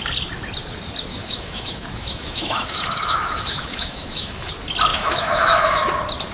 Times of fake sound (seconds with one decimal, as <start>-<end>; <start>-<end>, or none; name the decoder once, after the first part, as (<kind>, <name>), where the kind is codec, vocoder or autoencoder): 1.1-4.5 (autoencoder, DAC-VAE); 4.9-5.8